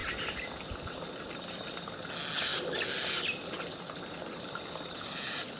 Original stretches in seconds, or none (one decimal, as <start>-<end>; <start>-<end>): 0.0-5.6